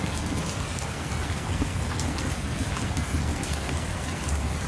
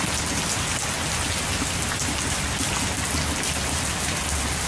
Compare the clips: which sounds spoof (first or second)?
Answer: first